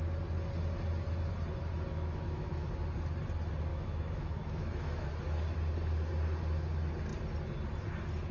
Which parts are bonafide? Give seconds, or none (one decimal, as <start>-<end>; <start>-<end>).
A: 0.0-1.9; 2.7-3.7; 5.1-8.3